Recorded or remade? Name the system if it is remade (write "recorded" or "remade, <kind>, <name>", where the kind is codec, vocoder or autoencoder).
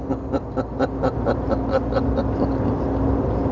recorded